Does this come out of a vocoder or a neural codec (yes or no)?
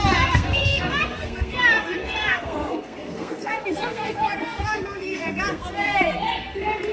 yes